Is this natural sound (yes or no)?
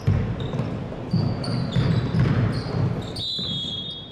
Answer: yes